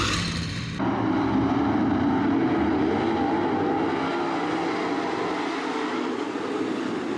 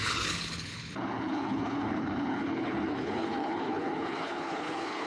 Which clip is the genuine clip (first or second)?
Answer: first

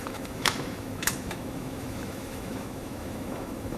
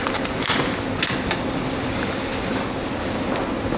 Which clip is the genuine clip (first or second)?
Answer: second